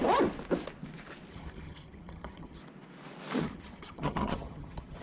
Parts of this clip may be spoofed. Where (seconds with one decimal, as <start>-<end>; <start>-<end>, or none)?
1.3-2.6; 3.4-5.0